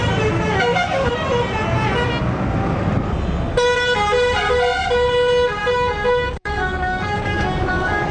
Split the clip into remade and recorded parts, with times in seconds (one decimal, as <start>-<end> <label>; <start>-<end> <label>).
0.0-0.5 recorded; 0.5-1.1 remade; 1.1-5.6 recorded; 5.6-8.1 remade